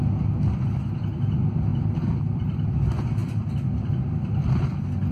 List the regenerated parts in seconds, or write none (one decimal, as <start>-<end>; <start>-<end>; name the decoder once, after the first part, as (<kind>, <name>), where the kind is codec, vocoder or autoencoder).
1.7-2.7 (vocoder, BigVGAN v2); 3.2-4.6